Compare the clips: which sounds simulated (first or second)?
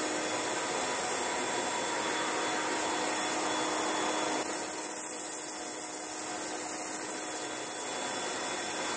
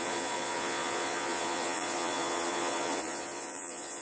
second